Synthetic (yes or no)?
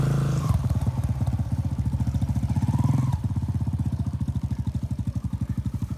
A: yes